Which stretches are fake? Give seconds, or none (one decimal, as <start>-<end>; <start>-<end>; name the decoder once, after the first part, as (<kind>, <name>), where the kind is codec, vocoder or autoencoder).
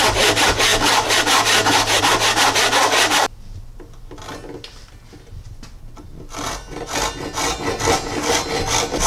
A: none